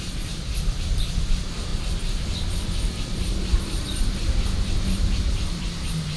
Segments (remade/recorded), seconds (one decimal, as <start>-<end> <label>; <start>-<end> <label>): 0.0-1.7 remade; 1.7-2.6 recorded; 2.6-6.2 remade